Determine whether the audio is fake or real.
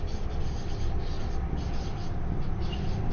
real